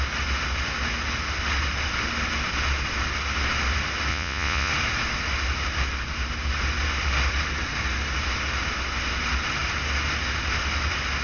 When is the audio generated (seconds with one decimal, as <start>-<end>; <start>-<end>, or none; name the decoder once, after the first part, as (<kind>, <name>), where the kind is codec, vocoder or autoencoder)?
4.1-4.7 (vocoder, Vocos)